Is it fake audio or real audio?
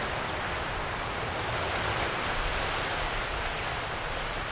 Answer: real